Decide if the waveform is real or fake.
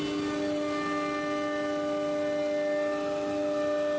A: real